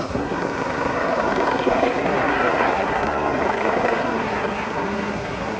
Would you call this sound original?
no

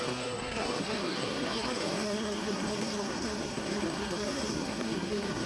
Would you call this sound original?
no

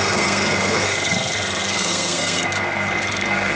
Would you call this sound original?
no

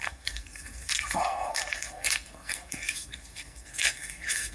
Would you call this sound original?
no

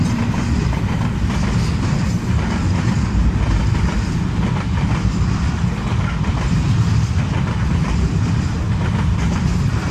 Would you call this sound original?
yes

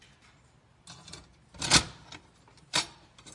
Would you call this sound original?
yes